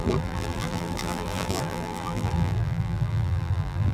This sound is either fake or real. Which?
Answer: fake